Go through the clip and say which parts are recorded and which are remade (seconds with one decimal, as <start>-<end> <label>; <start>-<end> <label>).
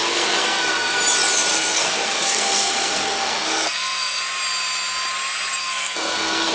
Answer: 0.0-1.0 remade; 1.0-1.5 recorded; 1.5-4.2 remade; 4.2-5.6 recorded; 5.6-6.5 remade